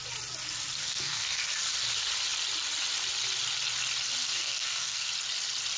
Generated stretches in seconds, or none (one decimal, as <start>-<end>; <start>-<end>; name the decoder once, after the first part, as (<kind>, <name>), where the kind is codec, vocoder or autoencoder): 0.8-1.3 (codec, SNAC); 4.2-5.1

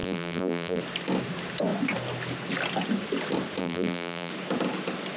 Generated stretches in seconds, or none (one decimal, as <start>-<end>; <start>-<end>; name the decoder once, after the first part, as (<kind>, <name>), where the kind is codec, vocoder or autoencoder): 0.0-0.8 (vocoder, BigVGAN v2); 3.6-4.3

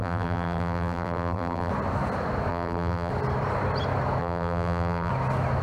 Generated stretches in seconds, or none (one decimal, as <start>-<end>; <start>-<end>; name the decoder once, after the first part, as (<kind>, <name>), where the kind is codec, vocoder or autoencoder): 0.0-1.7 (vocoder, BigVGAN v2); 2.5-3.1; 4.2-5.1

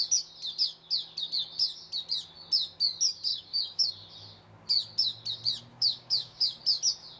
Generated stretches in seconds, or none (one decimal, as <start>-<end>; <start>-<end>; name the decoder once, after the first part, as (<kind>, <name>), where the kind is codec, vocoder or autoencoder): 3.3-3.9 (codec, DAC); 5.7-6.6

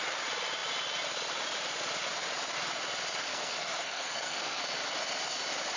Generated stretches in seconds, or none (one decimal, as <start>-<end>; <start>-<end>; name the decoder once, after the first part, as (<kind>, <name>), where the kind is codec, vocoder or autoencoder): 3.2-4.6 (codec, SNAC)

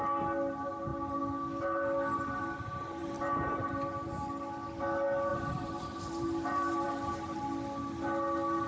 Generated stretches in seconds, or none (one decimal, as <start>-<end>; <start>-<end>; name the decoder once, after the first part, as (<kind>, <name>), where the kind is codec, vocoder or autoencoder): 3.0-3.7 (vocoder, BigVGAN v2); 5.3-7.4

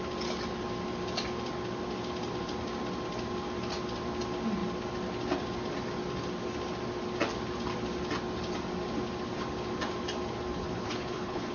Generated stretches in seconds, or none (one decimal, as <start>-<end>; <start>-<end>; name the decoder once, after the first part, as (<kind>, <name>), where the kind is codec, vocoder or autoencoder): 10.6-11.5 (codec, HILCodec)